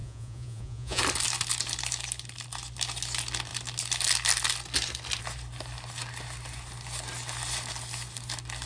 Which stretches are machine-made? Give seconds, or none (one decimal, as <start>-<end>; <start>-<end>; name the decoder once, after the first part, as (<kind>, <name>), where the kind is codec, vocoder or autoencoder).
0.0-1.0 (vocoder, Vocos)